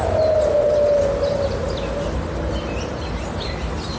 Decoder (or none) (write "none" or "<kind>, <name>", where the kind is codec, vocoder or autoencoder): none